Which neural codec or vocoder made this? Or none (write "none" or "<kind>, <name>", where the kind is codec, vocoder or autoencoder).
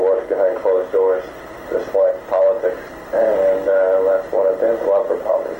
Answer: none